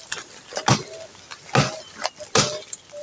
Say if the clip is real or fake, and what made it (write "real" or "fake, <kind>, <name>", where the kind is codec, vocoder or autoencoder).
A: real